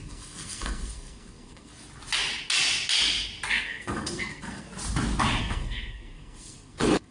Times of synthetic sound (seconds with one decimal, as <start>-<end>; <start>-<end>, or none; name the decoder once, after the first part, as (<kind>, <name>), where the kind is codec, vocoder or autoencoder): 0.0-1.7 (codec, SNAC); 3.5-4.7; 5.4-7.1